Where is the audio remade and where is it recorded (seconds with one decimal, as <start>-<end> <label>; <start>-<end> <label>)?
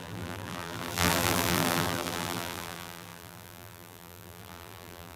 0.0-5.2 remade